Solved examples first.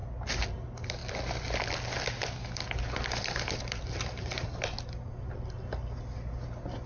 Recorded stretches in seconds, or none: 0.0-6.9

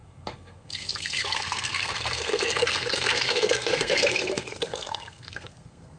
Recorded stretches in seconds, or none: none

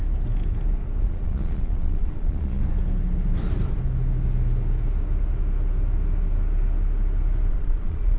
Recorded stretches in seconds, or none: 0.0-1.0; 2.6-7.5

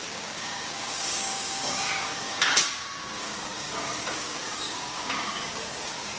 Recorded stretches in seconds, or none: none

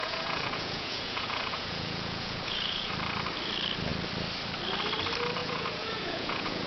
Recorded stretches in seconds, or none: 2.9-5.4

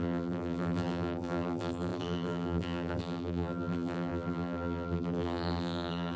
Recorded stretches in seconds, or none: none

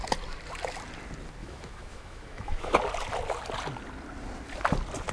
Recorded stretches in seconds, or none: 0.0-1.4; 2.8-5.1